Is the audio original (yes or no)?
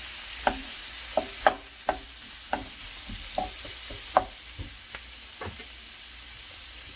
yes